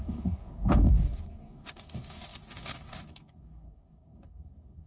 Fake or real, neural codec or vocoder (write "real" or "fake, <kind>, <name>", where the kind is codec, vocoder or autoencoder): fake, codec, DAC